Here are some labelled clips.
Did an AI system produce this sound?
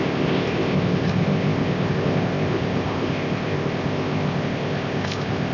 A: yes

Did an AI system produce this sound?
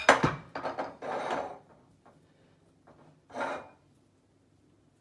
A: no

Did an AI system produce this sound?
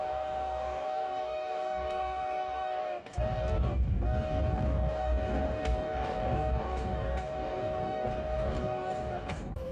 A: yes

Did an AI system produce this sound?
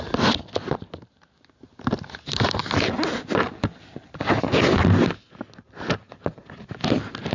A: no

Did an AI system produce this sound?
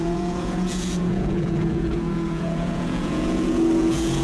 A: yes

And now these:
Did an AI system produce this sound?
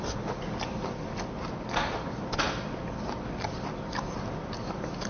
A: no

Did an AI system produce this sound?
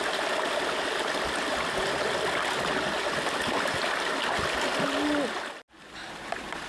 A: no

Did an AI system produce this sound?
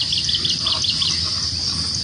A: no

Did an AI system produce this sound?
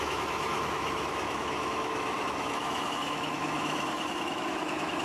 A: yes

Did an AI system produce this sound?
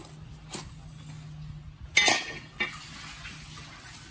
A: no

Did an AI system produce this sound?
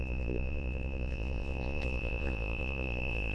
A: yes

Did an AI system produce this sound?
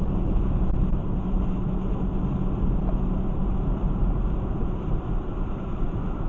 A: no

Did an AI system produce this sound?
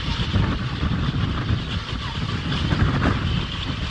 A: no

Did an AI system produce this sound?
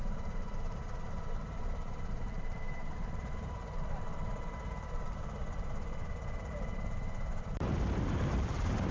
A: yes